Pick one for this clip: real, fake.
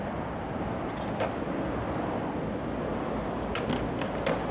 real